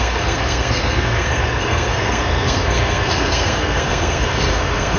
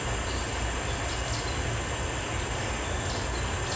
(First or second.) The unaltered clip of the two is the second